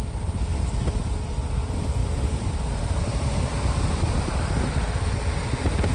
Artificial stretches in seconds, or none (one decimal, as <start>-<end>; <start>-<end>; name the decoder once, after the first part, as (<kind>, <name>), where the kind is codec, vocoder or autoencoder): 2.0-4.5 (vocoder, BigVGAN v2)